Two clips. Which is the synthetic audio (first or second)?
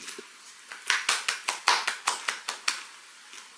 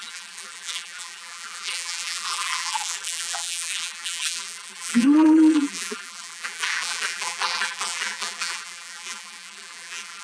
second